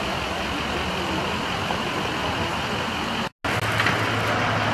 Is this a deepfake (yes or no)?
no